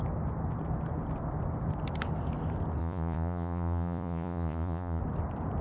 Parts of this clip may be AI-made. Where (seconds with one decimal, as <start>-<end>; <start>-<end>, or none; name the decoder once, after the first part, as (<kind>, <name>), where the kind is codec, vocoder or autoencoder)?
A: 2.8-5.0 (vocoder, Vocos)